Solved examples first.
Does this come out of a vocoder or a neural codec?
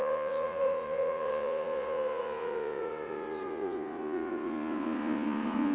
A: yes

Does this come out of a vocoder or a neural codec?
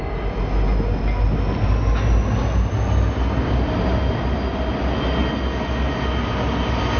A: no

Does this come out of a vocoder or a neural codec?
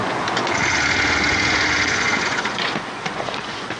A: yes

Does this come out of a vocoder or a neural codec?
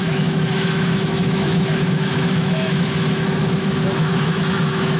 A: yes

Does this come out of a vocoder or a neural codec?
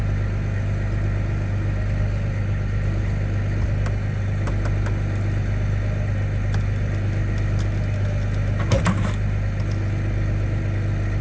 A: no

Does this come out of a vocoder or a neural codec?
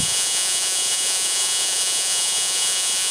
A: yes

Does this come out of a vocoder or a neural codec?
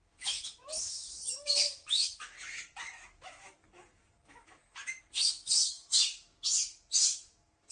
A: yes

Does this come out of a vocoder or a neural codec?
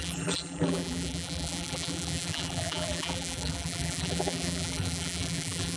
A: yes